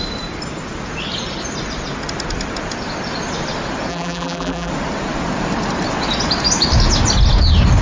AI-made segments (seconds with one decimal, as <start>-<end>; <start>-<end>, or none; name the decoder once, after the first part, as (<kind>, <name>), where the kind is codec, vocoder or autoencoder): 3.9-4.7 (vocoder, BigVGAN v2)